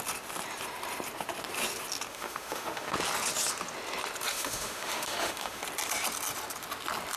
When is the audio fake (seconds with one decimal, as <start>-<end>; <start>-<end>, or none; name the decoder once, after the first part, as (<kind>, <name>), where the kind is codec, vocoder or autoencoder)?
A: 2.1-2.9 (autoencoder, DAC-VAE); 4.3-5.6